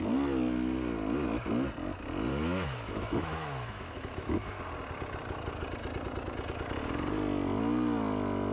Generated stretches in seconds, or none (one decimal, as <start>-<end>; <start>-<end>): 2.3-4.6

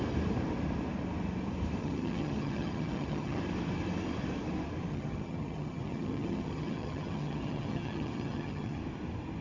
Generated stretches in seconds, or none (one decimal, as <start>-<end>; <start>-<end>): 1.8-3.4; 4.9-8.8

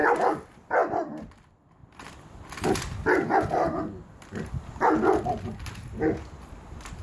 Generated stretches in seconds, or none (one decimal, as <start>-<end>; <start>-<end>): none

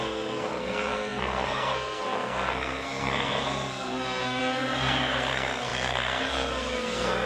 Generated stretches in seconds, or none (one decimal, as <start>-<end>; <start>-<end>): 0.0-7.3

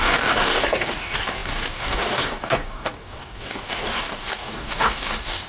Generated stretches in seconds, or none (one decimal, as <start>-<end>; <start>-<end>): 0.0-5.5